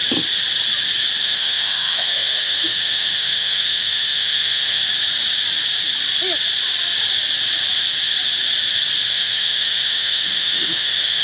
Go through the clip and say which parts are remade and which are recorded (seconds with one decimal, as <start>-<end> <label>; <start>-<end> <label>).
0.0-1.2 recorded; 1.2-4.8 remade; 4.8-9.1 recorded; 9.1-11.2 remade